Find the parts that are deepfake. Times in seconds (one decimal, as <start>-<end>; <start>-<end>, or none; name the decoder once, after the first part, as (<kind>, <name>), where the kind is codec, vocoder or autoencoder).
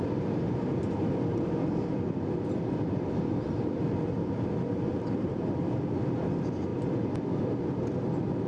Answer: none